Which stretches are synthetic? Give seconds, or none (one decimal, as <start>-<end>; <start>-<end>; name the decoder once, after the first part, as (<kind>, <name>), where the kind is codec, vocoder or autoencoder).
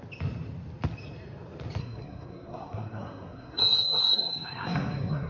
1.8-5.3 (codec, SNAC)